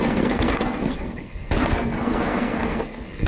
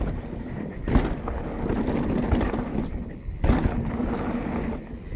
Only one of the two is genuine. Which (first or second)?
second